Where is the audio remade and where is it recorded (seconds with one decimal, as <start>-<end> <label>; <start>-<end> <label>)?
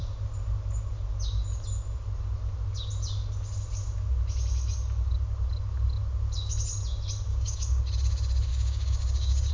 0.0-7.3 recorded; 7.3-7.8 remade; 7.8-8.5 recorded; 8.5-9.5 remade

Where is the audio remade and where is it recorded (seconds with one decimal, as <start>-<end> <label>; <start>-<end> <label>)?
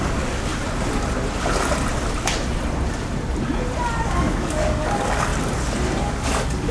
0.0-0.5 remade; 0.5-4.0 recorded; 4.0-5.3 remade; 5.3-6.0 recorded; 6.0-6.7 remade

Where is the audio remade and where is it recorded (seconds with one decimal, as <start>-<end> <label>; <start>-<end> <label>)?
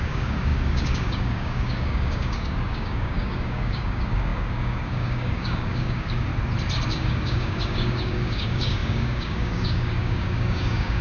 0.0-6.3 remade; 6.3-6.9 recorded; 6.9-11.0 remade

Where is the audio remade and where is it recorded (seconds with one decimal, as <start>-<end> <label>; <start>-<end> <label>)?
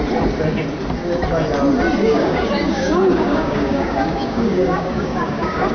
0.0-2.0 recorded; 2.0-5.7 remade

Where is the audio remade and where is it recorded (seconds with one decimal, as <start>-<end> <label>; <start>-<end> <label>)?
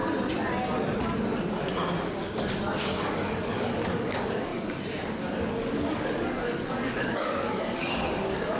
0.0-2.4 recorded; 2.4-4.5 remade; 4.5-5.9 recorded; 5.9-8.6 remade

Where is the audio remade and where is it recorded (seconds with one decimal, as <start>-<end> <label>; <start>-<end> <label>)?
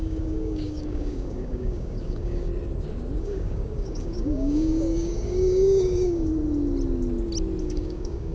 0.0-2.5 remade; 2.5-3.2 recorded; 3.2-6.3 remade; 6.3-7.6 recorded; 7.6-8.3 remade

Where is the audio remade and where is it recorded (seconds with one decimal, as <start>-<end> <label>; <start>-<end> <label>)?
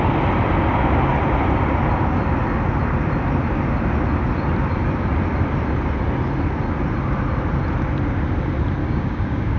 0.0-8.8 recorded; 8.8-9.6 remade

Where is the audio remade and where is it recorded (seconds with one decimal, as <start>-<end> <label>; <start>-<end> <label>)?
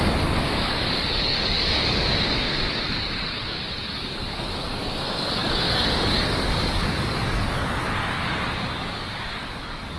0.0-10.0 remade